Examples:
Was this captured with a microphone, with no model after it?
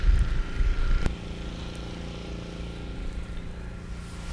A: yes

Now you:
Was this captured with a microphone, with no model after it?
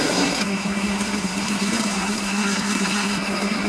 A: no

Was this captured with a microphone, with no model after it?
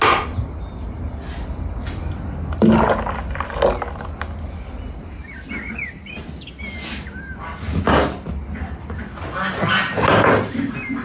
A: yes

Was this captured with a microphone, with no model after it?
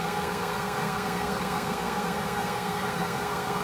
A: no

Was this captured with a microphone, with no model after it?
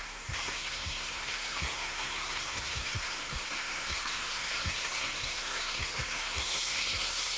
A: no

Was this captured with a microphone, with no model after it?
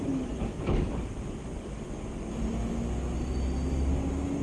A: yes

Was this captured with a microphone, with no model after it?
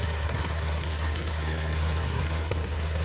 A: no